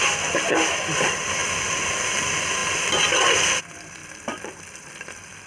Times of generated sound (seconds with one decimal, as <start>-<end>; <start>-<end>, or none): 0.0-1.4; 2.1-5.5